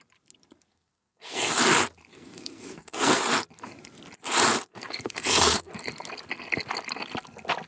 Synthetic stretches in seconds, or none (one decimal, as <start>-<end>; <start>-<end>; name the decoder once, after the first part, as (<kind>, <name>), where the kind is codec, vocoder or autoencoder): 0.7-1.6 (codec, SNAC); 2.1-3.2; 4.7-5.7